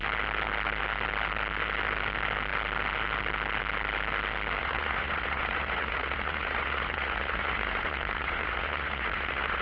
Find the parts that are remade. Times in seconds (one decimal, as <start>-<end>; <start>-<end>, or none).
4.6-9.6